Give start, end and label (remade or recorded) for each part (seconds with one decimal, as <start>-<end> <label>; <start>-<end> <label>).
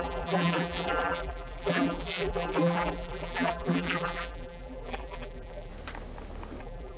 0.0-5.7 remade; 5.7-6.6 recorded; 6.6-7.0 remade